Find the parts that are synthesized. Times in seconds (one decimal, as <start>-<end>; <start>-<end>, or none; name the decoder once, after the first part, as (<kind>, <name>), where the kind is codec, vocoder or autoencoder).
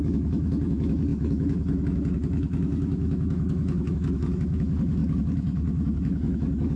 0.0-6.8 (autoencoder, DAC-VAE)